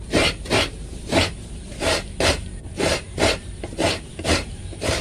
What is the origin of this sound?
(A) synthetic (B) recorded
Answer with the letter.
A